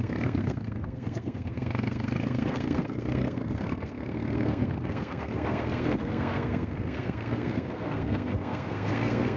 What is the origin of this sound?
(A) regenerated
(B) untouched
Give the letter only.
A